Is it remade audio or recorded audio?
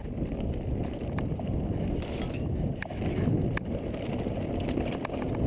recorded